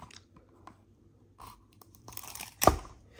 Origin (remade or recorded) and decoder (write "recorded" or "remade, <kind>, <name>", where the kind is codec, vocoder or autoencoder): remade, vocoder, BigVGAN v2